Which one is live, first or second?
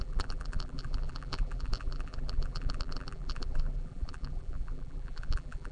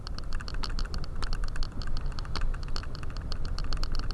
second